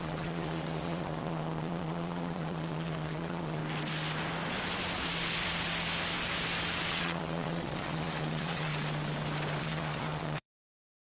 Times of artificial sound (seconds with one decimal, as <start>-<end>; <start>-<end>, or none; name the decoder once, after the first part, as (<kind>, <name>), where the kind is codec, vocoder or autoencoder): 0.0-3.6 (vocoder, Vocos); 6.9-8.7; 9.6-11.1